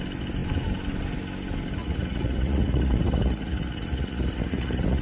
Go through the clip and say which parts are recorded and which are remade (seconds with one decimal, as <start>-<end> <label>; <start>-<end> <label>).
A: 0.0-1.8 recorded; 1.8-5.0 remade